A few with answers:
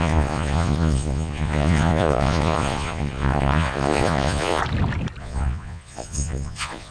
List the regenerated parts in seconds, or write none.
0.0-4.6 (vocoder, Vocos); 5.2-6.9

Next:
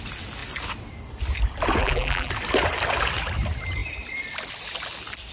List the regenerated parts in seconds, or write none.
1.8-2.3 (vocoder, BigVGAN v2)

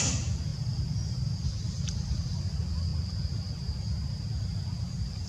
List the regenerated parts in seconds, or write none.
0.0-2.9 (vocoder, BigVGAN v2)

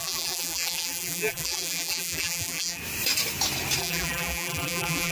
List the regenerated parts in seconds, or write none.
0.0-2.8 (vocoder, BigVGAN v2); 3.8-5.1

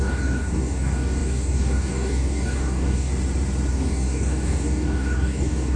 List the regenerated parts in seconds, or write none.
0.0-3.1 (codec, DAC); 3.7-5.8

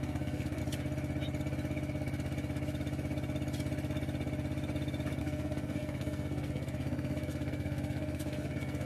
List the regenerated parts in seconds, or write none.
0.0-0.6 (codec, SNAC); 5.2-8.9

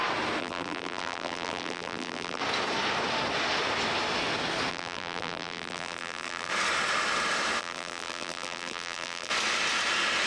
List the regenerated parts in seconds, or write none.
0.4-2.4 (vocoder, BigVGAN v2); 4.7-6.5; 7.6-9.3